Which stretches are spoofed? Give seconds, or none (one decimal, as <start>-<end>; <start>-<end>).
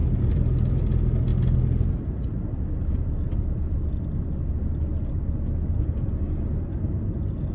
0.0-0.7; 1.3-1.9; 3.5-4.7